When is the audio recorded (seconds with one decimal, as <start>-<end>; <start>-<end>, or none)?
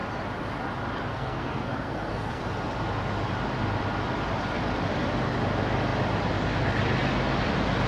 0.0-1.1; 2.4-7.9